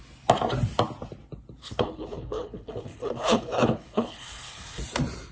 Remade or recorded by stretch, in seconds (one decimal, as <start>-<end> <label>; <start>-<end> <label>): 0.0-1.6 recorded; 1.6-4.8 remade; 4.8-5.3 recorded